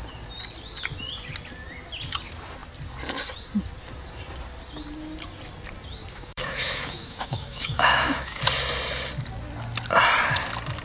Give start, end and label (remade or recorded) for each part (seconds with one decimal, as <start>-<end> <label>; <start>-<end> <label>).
0.0-6.1 recorded; 6.1-8.4 remade; 8.4-10.8 recorded

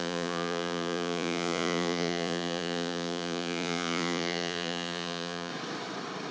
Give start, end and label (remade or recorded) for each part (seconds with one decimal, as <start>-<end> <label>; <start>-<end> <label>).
0.0-5.5 remade; 5.5-6.3 recorded

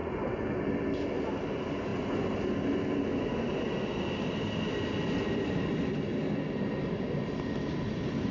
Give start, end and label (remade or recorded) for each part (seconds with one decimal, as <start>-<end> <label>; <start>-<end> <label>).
0.0-8.3 recorded

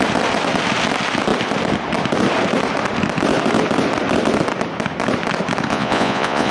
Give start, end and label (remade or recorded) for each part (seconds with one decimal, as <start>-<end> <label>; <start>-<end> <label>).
0.0-5.7 recorded; 5.7-6.5 remade

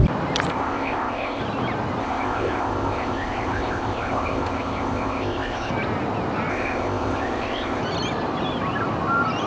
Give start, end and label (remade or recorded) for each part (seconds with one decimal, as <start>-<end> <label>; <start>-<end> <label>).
0.0-0.5 recorded; 0.5-1.4 remade; 1.4-2.0 recorded; 2.0-5.7 remade; 5.7-6.5 recorded; 6.5-7.8 remade; 7.8-9.5 recorded

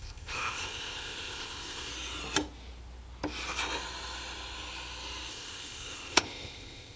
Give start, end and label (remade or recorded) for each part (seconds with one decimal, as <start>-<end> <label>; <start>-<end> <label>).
0.0-1.9 remade; 1.9-5.3 recorded; 5.3-7.0 remade

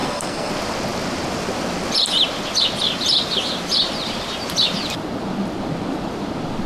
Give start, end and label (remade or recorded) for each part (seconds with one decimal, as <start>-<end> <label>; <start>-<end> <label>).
0.0-0.5 remade; 0.5-6.7 recorded

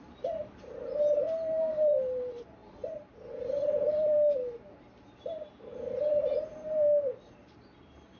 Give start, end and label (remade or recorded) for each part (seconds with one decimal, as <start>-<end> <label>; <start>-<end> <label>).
0.0-8.2 remade